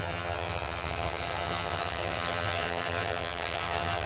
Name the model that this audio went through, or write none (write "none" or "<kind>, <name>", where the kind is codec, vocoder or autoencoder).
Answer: vocoder, HiFi-GAN